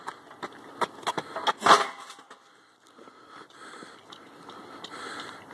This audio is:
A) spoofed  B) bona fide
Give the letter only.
B